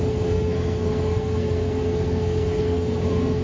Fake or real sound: fake